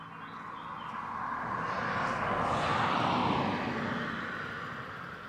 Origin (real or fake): real